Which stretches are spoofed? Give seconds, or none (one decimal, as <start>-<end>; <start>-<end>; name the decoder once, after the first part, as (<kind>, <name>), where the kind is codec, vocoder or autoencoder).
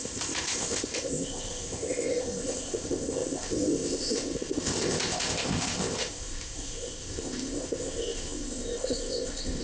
0.0-9.6 (codec, ZipCodec)